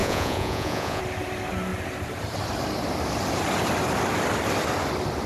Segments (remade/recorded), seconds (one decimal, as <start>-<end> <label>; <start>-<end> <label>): 0.0-1.0 remade; 1.0-5.3 recorded